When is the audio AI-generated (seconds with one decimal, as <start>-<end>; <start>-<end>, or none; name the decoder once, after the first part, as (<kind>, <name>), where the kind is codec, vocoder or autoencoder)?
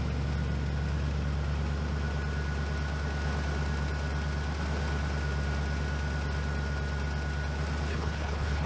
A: 7.9-8.7 (codec, HILCodec)